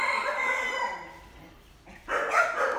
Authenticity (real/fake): real